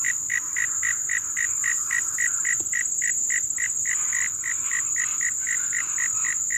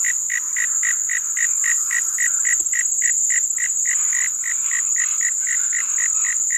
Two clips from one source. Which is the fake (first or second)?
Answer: first